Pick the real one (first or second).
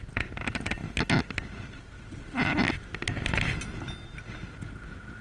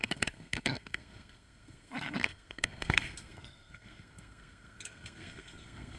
first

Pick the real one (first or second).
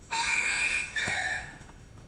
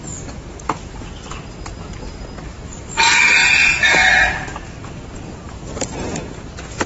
second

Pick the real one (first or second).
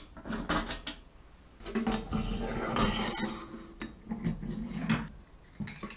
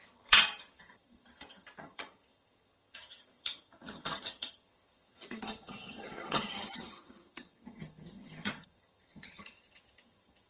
first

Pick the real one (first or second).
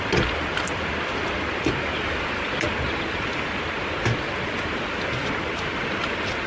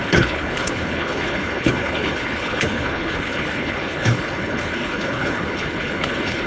first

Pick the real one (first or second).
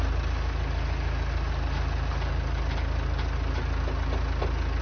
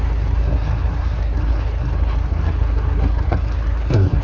first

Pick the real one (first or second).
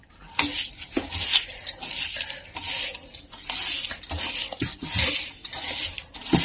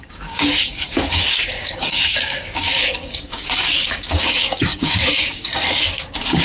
first